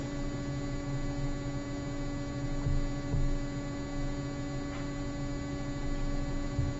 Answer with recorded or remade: recorded